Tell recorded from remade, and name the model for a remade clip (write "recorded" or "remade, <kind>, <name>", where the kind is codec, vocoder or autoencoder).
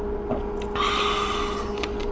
recorded